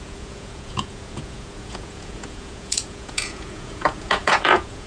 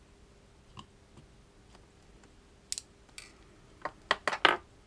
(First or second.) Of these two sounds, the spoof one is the first